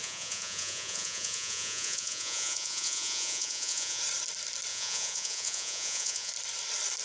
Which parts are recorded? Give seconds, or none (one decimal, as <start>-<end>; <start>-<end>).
4.0-4.7; 6.3-7.0

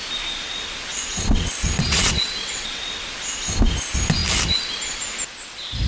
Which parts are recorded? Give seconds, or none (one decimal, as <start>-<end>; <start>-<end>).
0.0-0.9; 2.8-5.9